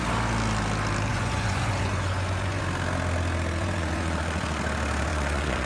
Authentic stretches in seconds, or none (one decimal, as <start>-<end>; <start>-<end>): 0.0-1.1; 2.6-3.6; 4.6-5.1